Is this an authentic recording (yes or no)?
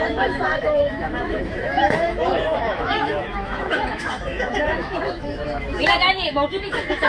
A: no